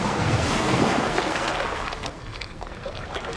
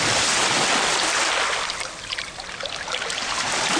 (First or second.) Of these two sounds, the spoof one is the first